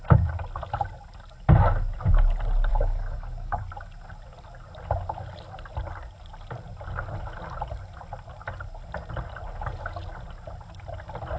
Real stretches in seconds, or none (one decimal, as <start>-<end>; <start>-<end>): 0.0-2.7; 3.6-11.4